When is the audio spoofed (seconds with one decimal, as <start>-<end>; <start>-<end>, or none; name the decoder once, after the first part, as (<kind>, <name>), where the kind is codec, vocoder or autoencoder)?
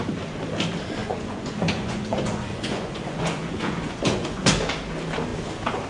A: 1.0-4.5 (vocoder, Vocos)